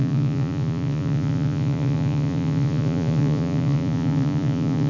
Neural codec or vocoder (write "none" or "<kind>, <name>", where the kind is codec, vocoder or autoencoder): vocoder, Vocos